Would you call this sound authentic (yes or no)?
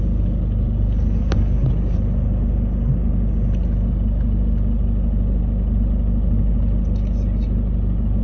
yes